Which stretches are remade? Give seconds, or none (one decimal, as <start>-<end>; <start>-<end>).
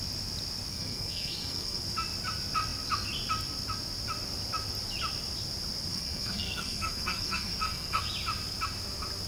0.7-1.8; 5.9-8.0